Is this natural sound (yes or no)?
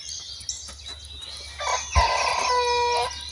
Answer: yes